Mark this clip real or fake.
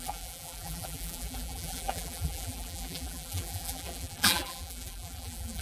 fake